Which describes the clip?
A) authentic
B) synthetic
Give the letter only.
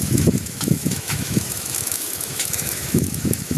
B